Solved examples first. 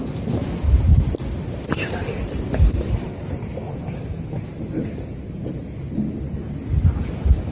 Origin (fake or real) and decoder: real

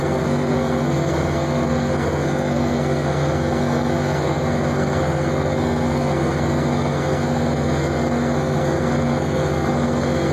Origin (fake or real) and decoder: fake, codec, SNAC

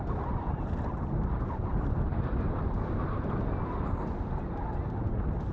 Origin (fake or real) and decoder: real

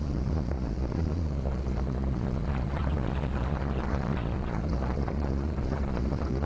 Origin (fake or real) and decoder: fake, vocoder, Vocos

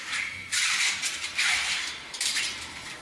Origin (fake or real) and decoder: fake, vocoder, BigVGAN v2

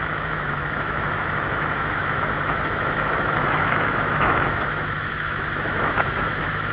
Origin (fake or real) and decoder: fake, autoencoder, DAC-VAE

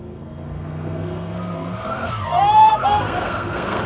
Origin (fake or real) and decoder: fake, codec, SNAC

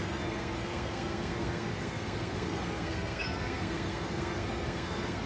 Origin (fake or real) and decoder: fake, codec, SNAC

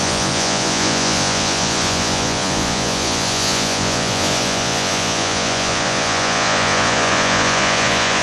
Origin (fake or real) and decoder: fake, vocoder, Vocos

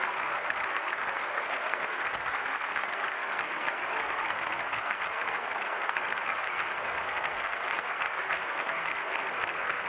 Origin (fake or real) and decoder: fake, codec, SNAC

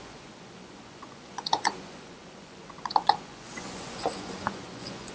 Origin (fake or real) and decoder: fake, vocoder, Vocos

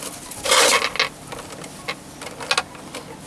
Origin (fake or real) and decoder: real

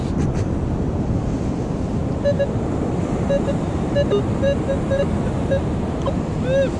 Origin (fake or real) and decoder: real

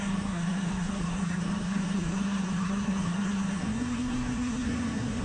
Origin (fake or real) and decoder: fake, codec, SNAC